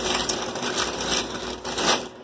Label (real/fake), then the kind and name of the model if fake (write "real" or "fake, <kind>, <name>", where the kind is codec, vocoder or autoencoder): real